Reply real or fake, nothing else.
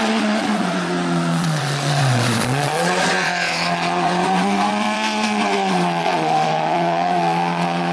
fake